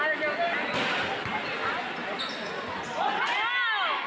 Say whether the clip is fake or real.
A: real